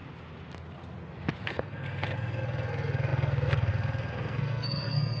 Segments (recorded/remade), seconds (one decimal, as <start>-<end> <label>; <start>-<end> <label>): 0.0-1.5 recorded; 1.5-5.2 remade